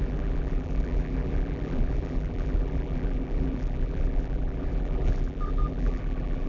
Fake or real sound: fake